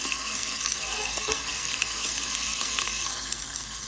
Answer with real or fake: fake